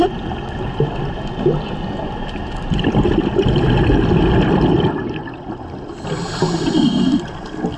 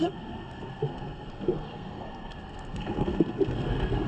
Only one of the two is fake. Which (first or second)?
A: second